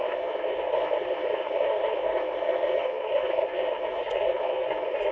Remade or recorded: remade